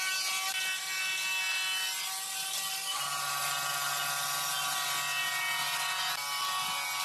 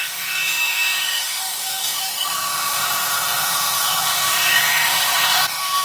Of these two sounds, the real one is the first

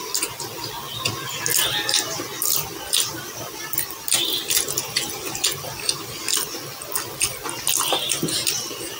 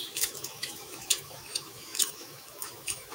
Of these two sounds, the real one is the first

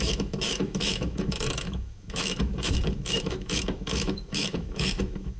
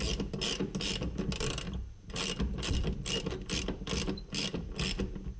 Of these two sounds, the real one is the second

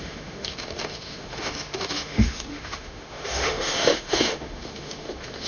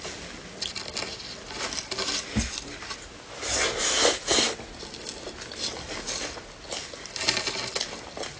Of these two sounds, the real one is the second